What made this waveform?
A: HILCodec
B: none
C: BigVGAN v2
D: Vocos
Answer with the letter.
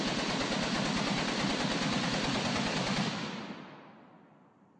B